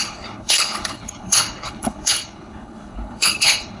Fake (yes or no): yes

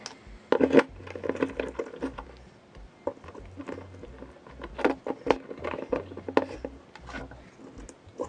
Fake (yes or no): no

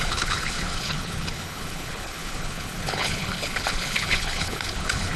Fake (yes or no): yes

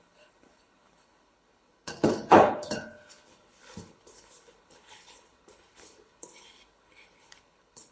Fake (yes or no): yes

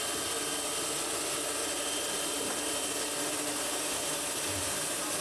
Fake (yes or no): no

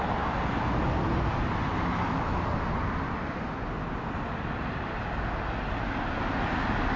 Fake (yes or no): no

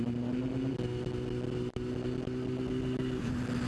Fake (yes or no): no